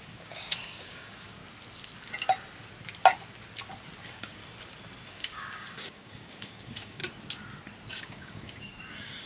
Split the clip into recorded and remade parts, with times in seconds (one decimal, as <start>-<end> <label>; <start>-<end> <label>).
0.0-1.4 remade; 1.4-4.0 recorded; 4.0-4.4 remade; 4.4-5.1 recorded; 5.1-7.0 remade; 7.0-7.9 recorded; 7.9-9.3 remade